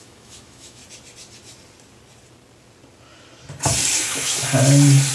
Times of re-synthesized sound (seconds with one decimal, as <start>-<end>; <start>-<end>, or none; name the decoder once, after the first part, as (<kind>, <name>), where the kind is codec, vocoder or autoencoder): 0.0-0.8 (autoencoder, DAC-VAE); 3.9-4.4